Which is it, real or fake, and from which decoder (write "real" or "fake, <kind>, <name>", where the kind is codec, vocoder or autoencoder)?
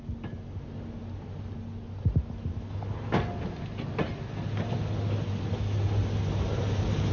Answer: real